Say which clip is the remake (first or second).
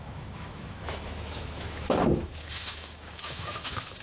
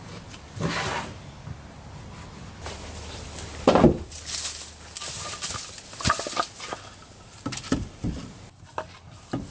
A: first